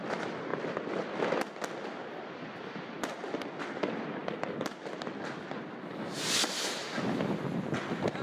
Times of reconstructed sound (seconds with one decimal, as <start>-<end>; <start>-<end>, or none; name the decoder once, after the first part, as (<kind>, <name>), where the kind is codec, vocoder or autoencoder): 4.2-5.5 (vocoder, BigVGAN v2)